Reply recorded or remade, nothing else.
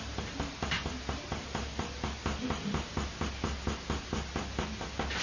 recorded